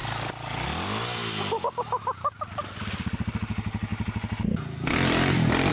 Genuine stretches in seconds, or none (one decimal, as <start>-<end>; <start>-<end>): 0.0-5.7